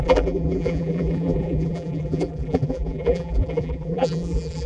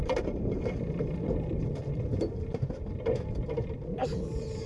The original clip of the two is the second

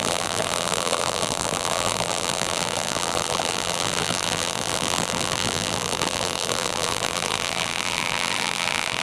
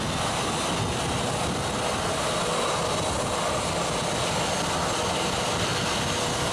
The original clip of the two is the second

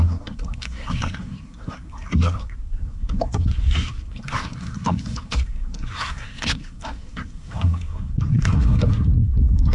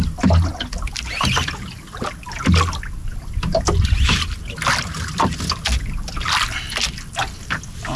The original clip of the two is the second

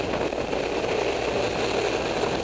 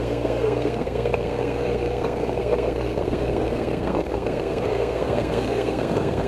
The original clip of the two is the first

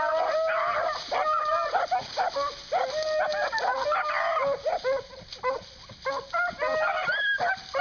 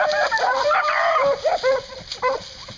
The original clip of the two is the first